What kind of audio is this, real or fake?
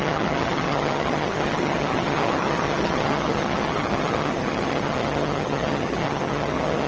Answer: fake